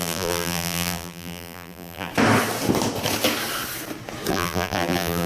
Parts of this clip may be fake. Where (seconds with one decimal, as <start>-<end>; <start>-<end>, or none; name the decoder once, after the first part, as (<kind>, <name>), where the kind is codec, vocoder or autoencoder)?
0.0-2.1 (vocoder, BigVGAN v2); 4.3-5.3